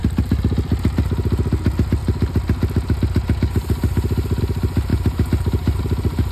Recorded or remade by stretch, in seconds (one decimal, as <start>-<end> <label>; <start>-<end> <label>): 0.0-6.3 recorded